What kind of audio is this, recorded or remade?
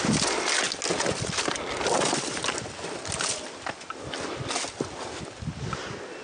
recorded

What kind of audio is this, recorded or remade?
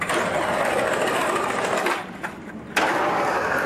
recorded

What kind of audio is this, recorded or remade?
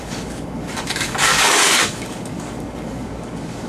remade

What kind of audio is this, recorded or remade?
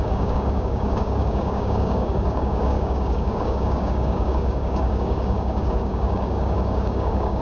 remade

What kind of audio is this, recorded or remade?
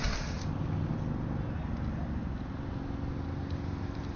recorded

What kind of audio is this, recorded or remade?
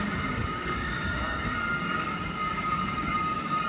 remade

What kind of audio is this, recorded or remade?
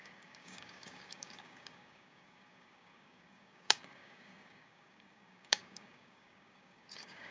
remade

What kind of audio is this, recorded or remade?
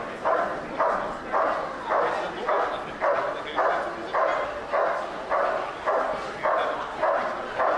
recorded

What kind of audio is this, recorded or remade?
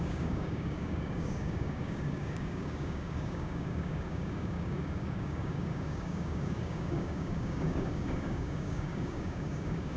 remade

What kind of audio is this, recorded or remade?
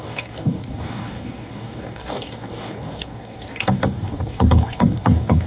remade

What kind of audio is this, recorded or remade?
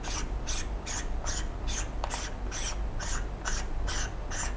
recorded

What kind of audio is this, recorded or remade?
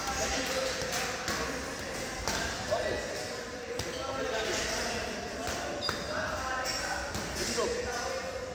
recorded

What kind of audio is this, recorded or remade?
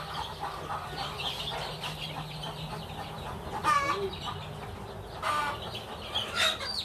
recorded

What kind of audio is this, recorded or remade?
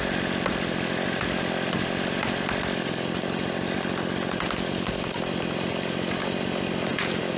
recorded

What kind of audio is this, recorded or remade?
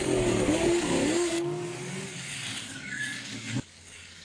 remade